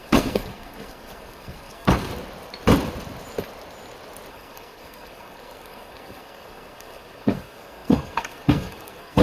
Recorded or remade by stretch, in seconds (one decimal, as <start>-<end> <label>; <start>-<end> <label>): 0.0-2.1 remade; 2.1-4.3 recorded; 4.3-9.2 remade